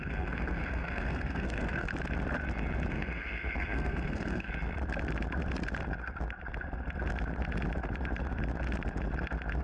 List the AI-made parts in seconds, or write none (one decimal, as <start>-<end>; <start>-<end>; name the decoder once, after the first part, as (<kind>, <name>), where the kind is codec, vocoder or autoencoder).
0.0-1.9 (codec, SNAC); 2.9-4.5